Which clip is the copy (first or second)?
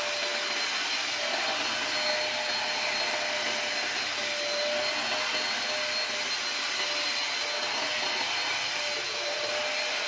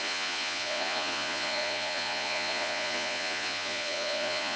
second